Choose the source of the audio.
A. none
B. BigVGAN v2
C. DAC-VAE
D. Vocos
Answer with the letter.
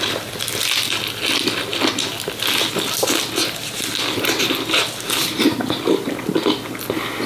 A